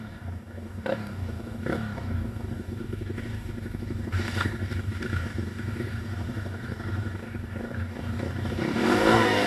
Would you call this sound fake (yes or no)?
yes